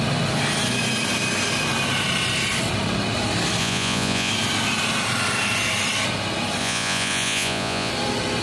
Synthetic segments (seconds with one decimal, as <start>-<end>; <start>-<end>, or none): 3.6-4.3; 6.6-7.9

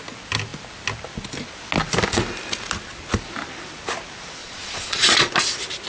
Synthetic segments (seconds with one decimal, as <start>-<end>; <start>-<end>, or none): 4.4-5.3

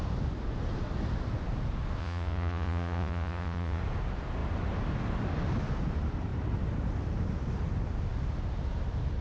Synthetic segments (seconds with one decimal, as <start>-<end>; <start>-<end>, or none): 2.0-3.8

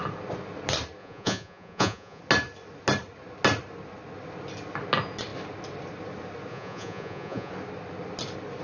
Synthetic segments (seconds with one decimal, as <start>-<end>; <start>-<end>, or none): 1.0-2.2; 6.5-7.5

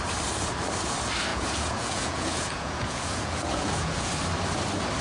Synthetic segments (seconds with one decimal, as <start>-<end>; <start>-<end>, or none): 1.3-4.1